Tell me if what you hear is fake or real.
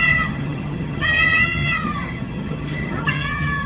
fake